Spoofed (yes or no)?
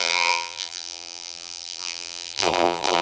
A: yes